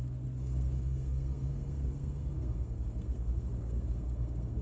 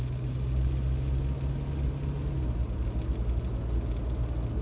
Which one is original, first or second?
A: second